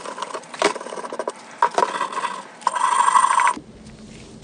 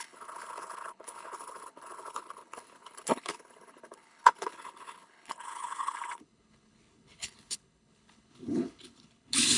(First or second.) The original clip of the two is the first